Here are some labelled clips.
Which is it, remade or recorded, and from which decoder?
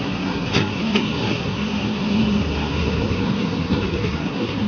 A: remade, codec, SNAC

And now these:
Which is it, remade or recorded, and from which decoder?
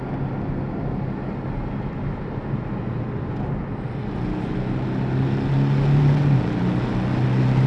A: recorded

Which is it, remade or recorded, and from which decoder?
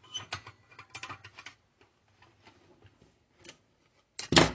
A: recorded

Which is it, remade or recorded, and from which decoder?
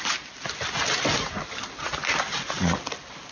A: recorded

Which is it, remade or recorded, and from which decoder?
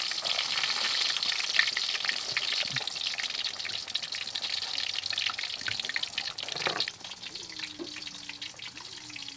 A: recorded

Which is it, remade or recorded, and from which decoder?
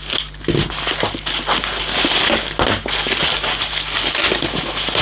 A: recorded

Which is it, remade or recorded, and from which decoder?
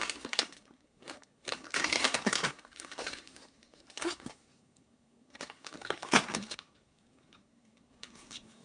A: remade, codec, SNAC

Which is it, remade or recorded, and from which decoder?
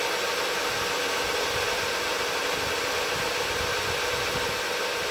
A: recorded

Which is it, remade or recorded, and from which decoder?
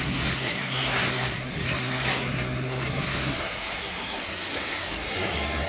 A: remade, codec, SNAC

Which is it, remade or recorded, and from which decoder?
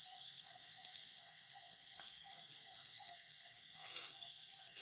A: remade, codec, SNAC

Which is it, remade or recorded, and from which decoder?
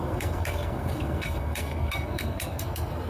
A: remade, codec, SNAC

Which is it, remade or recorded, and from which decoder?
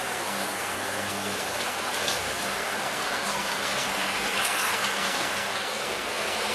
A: remade, codec, SNAC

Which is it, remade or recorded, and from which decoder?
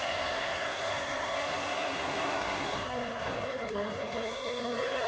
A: remade, codec, SNAC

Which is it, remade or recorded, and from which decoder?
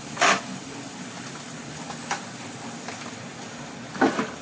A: recorded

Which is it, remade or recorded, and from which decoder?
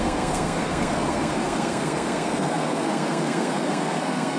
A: remade, codec, SNAC